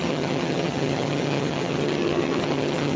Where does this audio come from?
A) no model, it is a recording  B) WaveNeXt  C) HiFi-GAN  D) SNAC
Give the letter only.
C